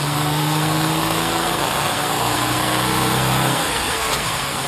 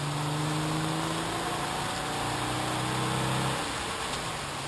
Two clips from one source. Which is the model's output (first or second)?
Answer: first